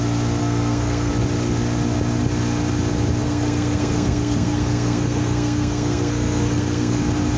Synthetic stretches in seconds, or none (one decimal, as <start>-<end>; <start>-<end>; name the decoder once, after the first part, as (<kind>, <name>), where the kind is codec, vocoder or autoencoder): 0.4-1.1 (codec, SNAC); 3.2-7.0